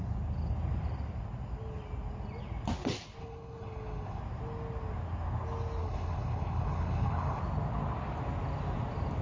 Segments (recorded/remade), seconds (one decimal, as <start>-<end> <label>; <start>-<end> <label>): 0.0-3.2 recorded; 3.2-4.2 remade; 4.2-5.8 recorded; 5.8-7.4 remade; 7.4-9.2 recorded